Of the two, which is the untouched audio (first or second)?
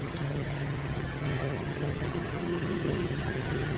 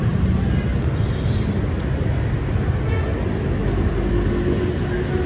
second